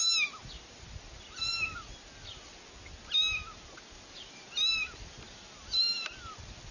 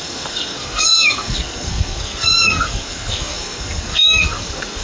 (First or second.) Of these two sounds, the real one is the first